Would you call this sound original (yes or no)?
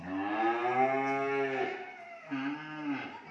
yes